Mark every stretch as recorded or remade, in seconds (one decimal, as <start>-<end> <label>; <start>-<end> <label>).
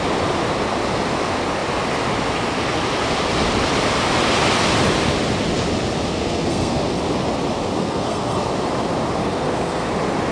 0.0-6.1 recorded; 6.1-7.0 remade; 7.0-7.8 recorded; 7.8-8.5 remade; 8.5-9.2 recorded; 9.2-9.9 remade; 9.9-10.3 recorded